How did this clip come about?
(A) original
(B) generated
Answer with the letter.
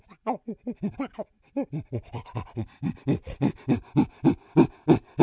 A